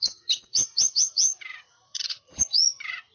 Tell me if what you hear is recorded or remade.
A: remade